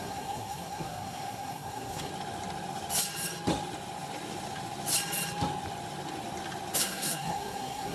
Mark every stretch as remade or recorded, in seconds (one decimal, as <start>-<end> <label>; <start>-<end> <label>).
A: 0.0-2.1 remade; 2.1-6.8 recorded; 6.8-7.9 remade